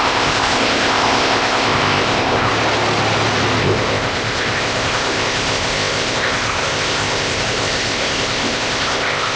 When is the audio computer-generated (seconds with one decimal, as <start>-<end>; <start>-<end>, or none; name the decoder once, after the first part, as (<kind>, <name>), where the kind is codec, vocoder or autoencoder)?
0.0-2.5 (codec, ZipCodec); 3.6-9.4